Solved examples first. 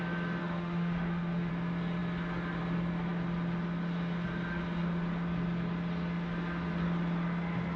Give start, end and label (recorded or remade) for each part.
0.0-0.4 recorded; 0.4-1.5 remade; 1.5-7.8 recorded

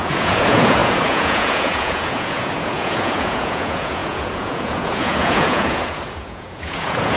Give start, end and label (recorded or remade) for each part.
0.0-7.2 remade

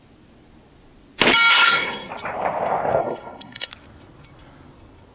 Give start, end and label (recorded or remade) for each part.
0.0-1.5 recorded; 1.5-2.1 remade; 2.1-3.0 recorded; 3.0-3.7 remade; 3.7-5.1 recorded

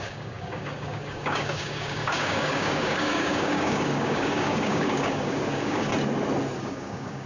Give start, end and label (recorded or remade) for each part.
0.0-5.9 remade; 5.9-6.6 recorded; 6.6-7.3 remade